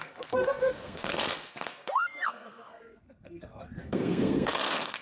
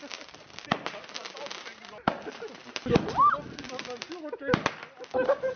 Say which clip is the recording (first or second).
second